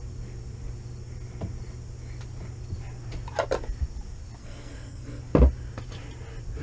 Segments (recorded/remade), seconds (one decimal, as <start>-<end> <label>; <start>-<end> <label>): 0.0-4.4 recorded; 4.4-5.2 remade; 5.2-6.6 recorded